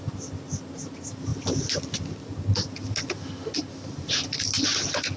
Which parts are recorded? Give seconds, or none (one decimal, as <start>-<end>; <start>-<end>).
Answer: 0.0-5.2